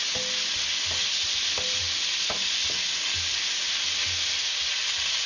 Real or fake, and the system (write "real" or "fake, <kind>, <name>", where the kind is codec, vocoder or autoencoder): real